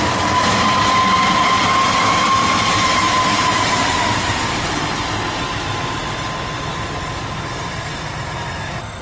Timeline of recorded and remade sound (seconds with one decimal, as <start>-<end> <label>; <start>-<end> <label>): 0.0-9.0 recorded

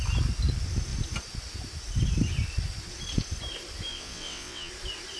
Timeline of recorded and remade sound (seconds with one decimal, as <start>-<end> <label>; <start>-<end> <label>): 0.0-3.9 recorded; 3.9-4.7 remade; 4.7-5.2 recorded

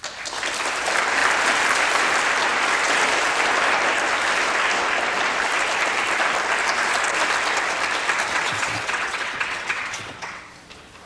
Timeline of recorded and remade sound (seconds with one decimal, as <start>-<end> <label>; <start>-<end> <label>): 0.0-8.3 recorded; 8.3-10.5 remade; 10.5-11.1 recorded

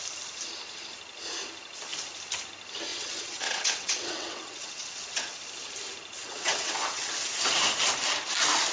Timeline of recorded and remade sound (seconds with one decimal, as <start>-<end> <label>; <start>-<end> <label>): 0.0-2.9 recorded; 2.9-5.4 remade; 5.4-6.2 recorded; 6.2-7.1 remade; 7.1-8.7 recorded